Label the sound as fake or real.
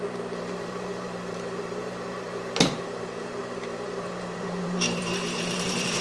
fake